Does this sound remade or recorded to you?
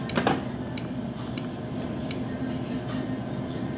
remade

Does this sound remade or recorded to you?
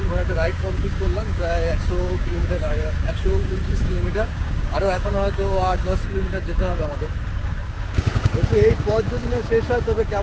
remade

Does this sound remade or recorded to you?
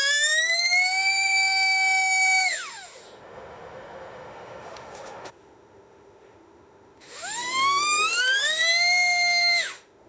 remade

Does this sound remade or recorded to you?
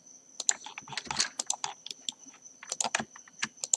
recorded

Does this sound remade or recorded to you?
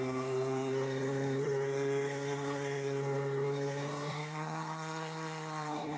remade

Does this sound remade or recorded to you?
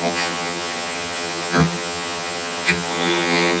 remade